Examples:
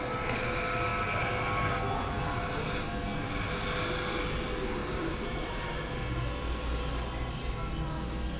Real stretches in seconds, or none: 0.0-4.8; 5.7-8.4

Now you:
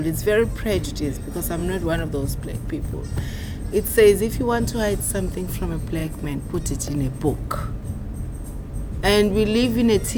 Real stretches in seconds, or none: 0.0-6.0; 6.5-10.2

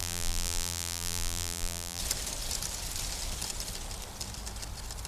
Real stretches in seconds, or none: 2.0-5.1

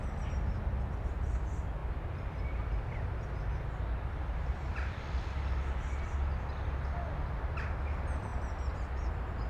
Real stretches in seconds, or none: 0.0-1.8; 5.2-8.3; 9.1-9.5

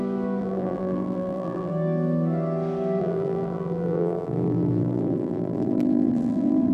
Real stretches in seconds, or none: 0.0-0.4; 1.7-3.0